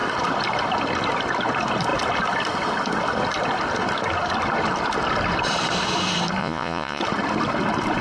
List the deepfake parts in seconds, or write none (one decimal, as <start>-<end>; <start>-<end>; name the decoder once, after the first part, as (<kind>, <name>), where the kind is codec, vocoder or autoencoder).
6.4-7.0 (vocoder, Vocos)